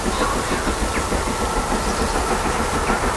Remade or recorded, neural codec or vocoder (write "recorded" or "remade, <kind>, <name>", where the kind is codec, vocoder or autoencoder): recorded